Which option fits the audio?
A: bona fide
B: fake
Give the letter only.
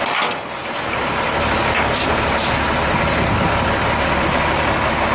A